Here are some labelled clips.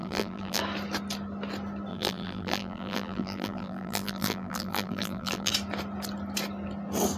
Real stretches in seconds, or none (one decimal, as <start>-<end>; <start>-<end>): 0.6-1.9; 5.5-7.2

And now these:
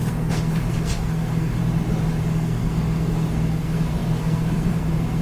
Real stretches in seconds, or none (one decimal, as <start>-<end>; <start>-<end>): 1.6-2.2

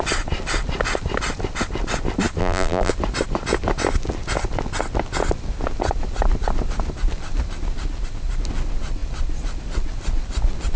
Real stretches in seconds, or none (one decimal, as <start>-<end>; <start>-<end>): 0.0-2.4; 2.9-10.8

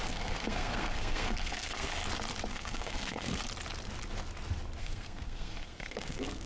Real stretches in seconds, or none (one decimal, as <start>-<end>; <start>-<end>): 2.0-2.5; 3.3-4.8

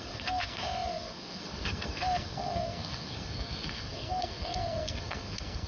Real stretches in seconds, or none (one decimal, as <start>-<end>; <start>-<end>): none

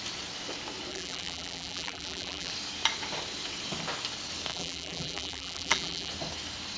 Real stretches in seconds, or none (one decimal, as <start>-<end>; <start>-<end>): 0.0-0.9; 2.5-4.5; 6.1-6.8